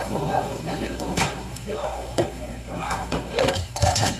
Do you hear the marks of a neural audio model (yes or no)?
yes